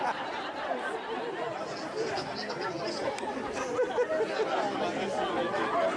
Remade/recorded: recorded